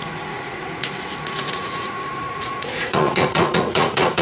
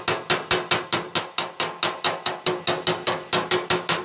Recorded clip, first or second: second